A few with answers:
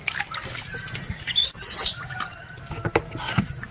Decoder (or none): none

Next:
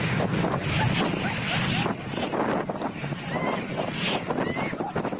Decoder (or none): none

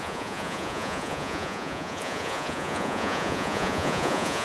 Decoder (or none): vocoder, Vocos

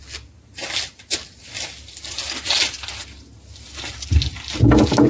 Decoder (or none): none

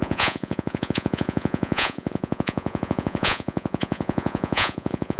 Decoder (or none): vocoder, Vocos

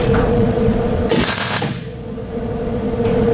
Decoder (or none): vocoder, Vocos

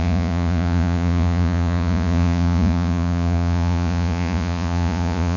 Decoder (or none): vocoder, Vocos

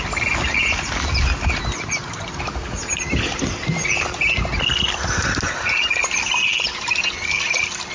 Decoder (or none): none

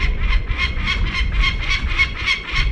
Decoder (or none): vocoder, Vocos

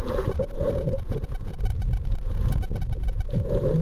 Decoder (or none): vocoder, Vocos